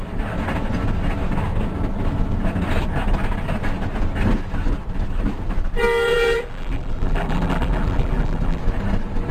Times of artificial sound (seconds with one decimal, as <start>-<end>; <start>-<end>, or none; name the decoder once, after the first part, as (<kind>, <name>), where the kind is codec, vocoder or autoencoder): 6.1-8.6 (vocoder, BigVGAN v2)